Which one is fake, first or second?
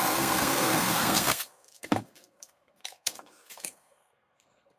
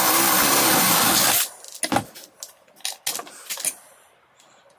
first